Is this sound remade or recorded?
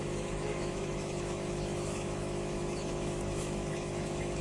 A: remade